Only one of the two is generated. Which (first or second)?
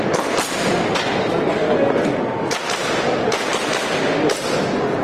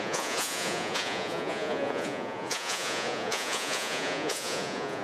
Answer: second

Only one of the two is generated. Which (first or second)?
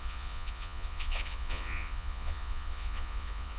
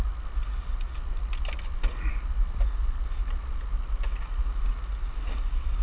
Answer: first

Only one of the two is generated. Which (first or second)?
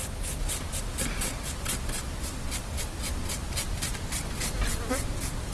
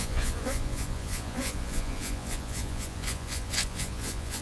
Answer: second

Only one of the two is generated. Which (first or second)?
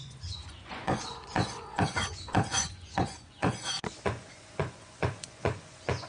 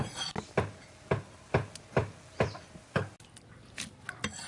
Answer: first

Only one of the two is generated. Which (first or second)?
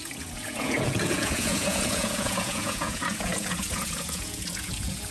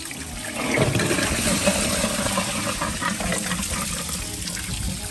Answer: first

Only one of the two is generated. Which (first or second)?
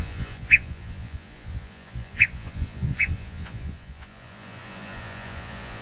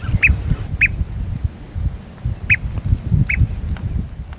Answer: first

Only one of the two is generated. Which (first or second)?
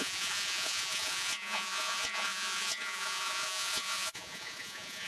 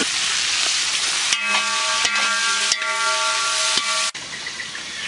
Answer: first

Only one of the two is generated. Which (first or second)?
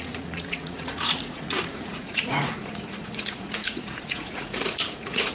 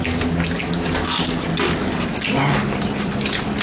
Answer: first